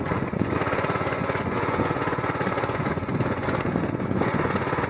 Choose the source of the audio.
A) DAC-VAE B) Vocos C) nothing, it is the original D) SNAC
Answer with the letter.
B